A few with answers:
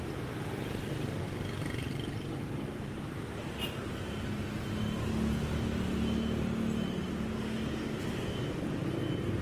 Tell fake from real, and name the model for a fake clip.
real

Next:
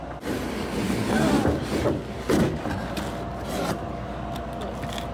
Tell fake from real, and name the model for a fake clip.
real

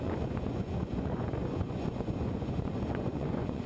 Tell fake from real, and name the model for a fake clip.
fake, vocoder, Vocos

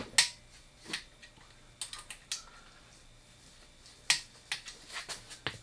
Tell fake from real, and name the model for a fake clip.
real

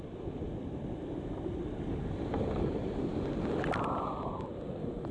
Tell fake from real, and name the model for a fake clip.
real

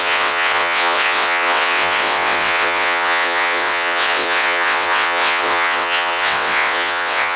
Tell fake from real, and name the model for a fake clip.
fake, vocoder, WaveNeXt